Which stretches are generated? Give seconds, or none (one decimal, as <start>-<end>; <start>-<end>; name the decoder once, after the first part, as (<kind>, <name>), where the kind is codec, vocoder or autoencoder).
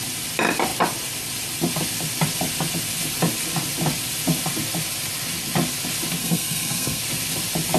6.2-7.0 (codec, SNAC)